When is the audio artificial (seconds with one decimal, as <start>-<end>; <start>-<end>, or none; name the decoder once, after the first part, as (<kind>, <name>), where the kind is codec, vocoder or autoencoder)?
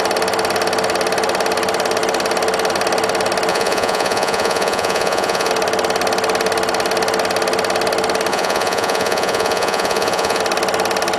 3.5-5.5 (vocoder, Vocos); 8.3-10.4